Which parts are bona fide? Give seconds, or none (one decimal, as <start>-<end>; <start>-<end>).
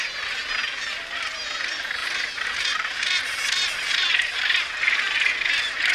0.0-5.9